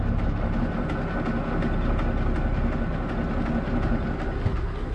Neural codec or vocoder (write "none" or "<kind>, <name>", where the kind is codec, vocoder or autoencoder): none